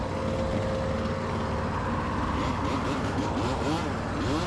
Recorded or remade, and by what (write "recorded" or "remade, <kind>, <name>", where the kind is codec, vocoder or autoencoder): recorded